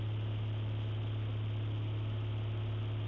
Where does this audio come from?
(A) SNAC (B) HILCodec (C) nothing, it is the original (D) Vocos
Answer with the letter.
C